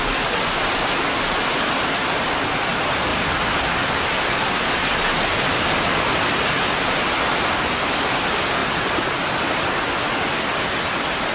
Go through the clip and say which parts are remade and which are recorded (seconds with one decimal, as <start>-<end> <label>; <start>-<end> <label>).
0.0-11.3 recorded